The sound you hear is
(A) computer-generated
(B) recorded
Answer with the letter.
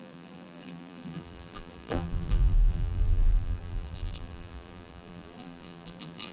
A